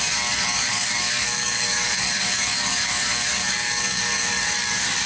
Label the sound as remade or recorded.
remade